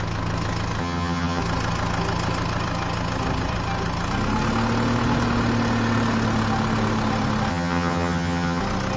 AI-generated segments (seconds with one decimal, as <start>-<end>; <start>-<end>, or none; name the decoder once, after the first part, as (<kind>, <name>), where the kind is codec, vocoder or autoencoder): 0.8-1.4 (vocoder, HiFi-GAN); 7.5-8.6